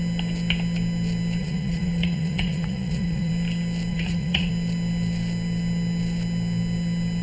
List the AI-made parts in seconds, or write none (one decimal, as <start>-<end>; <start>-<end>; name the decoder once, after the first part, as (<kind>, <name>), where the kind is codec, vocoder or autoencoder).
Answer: 1.4-3.3 (vocoder, Vocos); 3.9-4.5